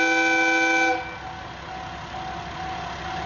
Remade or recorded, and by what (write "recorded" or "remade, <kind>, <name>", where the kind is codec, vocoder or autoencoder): recorded